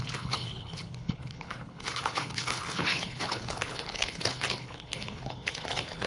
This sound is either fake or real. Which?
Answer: fake